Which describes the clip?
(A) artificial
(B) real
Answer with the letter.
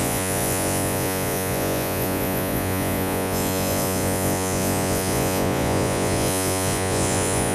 A